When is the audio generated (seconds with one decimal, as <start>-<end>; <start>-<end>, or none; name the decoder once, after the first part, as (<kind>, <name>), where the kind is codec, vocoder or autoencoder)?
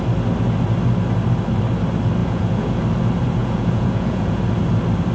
2.2-2.8 (vocoder, Vocos); 3.4-4.4